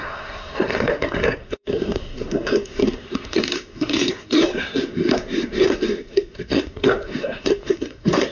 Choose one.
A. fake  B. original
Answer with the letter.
A